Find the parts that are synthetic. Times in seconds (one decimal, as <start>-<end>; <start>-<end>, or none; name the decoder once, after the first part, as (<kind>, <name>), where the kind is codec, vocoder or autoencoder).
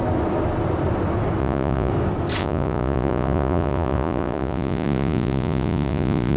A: 1.4-1.9 (vocoder, Vocos); 2.4-6.4